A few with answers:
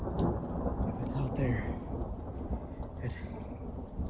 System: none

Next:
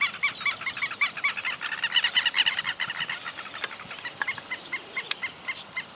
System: none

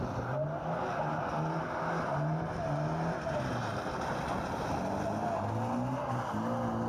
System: none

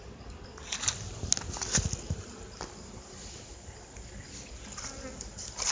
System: none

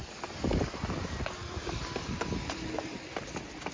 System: none